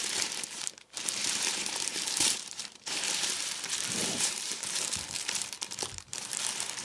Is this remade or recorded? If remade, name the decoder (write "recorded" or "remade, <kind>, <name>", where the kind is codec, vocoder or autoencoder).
remade, vocoder, BigVGAN v2